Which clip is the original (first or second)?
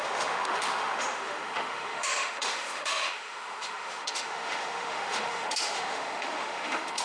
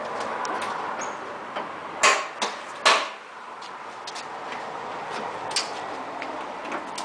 second